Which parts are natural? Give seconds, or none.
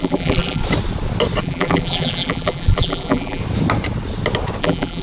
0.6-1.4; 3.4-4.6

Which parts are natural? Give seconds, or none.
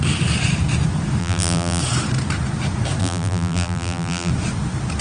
0.0-1.2; 1.8-3.0; 4.3-5.0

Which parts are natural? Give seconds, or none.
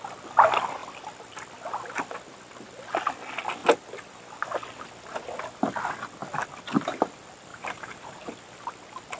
0.0-7.5; 8.3-9.2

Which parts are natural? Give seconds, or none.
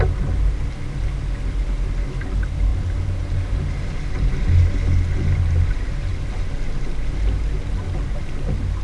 0.0-2.7; 4.1-8.8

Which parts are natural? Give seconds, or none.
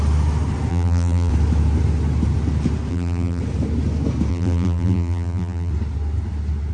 0.0-0.7; 1.3-2.9; 3.4-4.3; 5.7-6.7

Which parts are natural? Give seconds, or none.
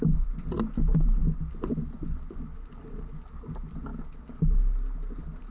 0.0-5.5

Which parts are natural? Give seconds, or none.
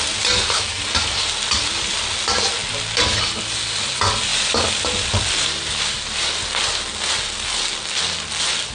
0.0-8.7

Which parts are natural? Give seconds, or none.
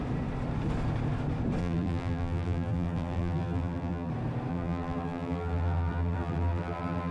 0.0-1.6; 4.1-4.5